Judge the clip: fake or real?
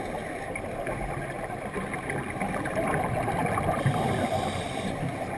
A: real